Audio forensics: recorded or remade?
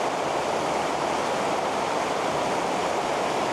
recorded